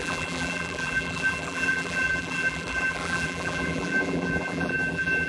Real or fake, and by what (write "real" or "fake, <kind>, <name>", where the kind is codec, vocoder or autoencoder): fake, vocoder, BigVGAN v2